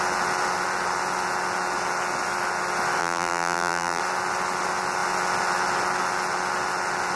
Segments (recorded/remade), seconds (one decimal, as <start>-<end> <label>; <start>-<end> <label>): 0.0-3.0 recorded; 3.0-4.0 remade; 4.0-7.2 recorded